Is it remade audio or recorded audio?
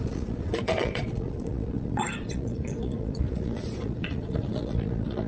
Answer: remade